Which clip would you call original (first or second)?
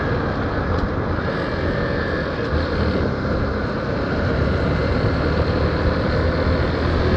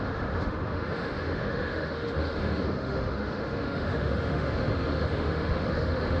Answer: first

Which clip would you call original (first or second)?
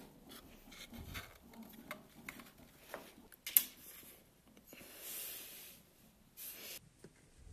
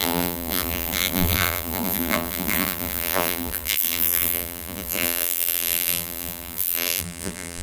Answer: first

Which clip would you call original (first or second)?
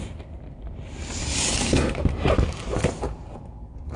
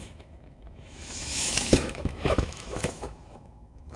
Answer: first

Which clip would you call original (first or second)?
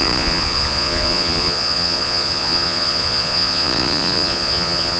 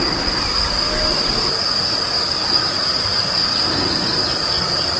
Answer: second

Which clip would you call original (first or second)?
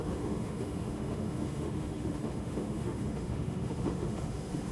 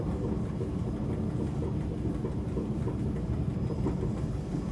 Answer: second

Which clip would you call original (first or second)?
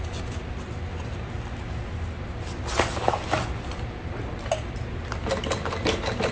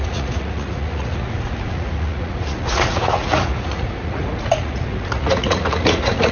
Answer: first